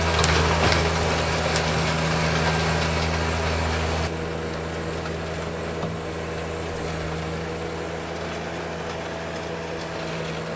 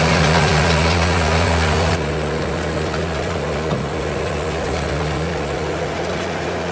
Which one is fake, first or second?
second